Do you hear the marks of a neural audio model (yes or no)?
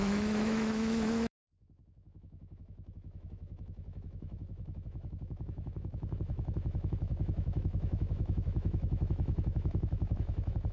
yes